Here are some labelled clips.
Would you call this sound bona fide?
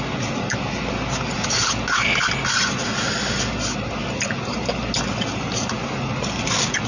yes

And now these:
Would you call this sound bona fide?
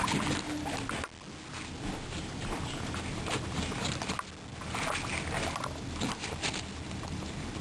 yes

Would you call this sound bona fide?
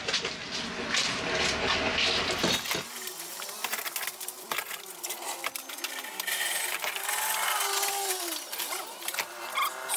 yes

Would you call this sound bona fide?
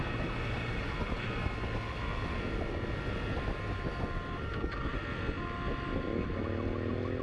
yes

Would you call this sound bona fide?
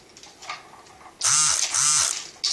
yes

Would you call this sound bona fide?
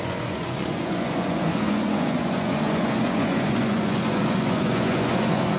no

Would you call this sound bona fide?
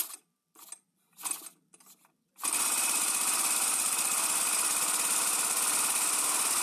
yes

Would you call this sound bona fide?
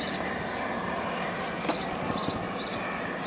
yes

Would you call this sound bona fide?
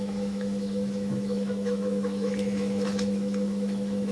no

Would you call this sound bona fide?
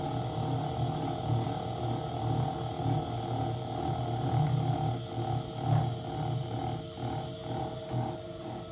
yes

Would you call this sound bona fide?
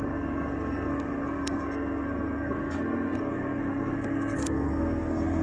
no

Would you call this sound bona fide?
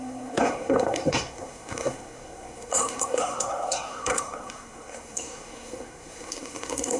no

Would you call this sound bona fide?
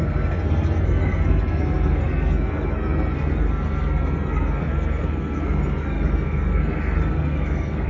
no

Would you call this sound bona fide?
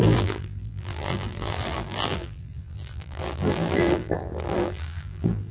no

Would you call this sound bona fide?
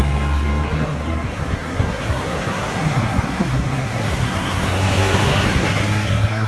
no